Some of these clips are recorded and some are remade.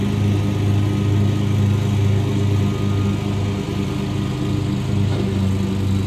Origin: recorded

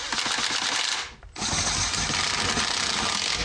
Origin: recorded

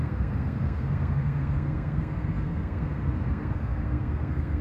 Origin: remade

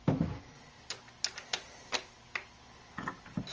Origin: recorded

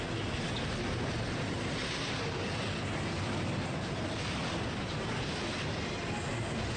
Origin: recorded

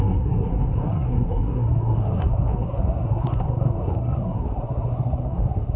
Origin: remade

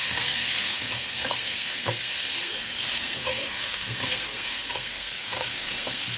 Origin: remade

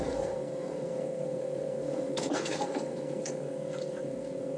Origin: remade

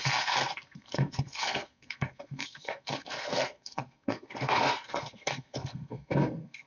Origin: remade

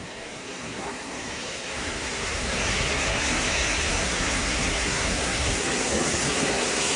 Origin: remade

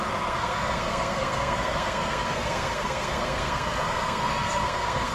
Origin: remade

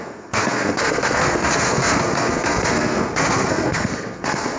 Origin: remade